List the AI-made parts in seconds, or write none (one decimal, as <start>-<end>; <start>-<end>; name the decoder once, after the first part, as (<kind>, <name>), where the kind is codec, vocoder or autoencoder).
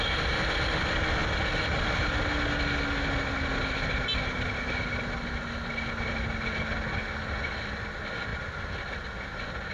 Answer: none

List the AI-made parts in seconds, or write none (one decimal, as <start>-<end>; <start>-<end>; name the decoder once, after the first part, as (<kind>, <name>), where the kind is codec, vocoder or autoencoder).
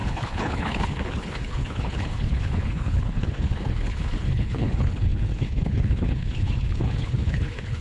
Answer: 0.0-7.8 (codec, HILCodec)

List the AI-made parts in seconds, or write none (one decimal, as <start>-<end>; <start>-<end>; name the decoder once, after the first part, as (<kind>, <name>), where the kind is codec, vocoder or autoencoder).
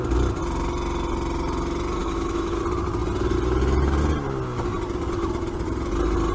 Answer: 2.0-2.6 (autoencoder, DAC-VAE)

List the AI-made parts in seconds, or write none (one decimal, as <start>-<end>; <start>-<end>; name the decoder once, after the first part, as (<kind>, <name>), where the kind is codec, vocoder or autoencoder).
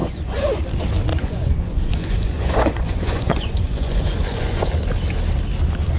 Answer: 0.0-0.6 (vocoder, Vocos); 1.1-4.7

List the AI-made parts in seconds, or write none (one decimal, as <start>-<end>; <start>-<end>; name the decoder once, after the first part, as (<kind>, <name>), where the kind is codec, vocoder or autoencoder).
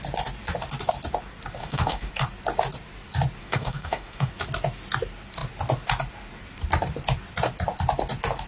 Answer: 1.6-2.1 (autoencoder, DAC-VAE); 3.4-4.3